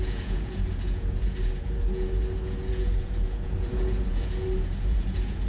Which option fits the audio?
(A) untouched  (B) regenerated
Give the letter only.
B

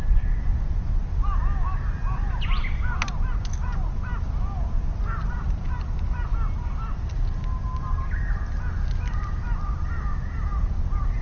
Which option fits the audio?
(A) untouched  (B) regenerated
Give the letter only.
A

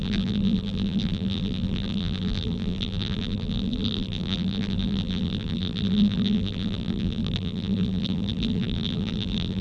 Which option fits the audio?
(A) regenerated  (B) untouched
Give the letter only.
A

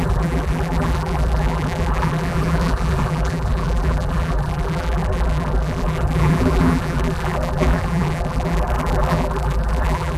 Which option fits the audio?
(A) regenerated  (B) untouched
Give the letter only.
A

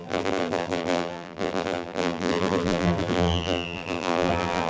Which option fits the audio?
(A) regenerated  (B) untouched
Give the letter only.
A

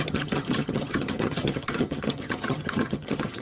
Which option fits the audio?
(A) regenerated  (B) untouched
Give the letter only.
A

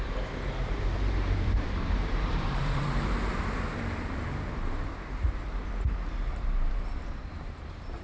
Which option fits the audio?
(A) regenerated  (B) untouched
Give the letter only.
A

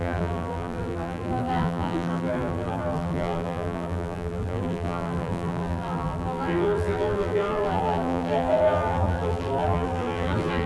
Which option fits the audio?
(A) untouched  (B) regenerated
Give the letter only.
B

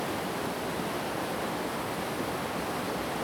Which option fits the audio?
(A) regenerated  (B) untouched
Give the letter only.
B